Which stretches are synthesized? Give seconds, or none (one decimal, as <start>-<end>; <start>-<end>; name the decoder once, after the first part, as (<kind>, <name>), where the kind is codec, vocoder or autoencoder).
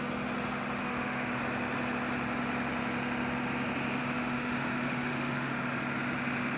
0.8-1.4 (autoencoder, DAC-VAE); 4.0-5.5